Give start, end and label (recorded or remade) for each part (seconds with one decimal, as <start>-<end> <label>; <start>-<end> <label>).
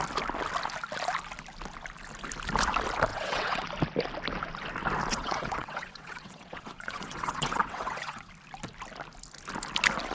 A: 0.0-3.1 recorded; 3.1-3.7 remade; 3.7-5.1 recorded; 5.1-8.3 remade; 8.3-10.1 recorded